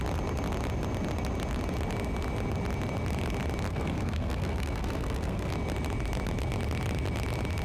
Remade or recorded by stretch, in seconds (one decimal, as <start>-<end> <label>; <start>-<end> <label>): 0.0-3.7 recorded; 3.7-5.5 remade; 5.5-7.6 recorded